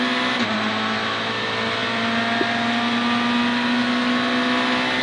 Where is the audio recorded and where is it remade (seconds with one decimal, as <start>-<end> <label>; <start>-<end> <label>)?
0.0-5.0 recorded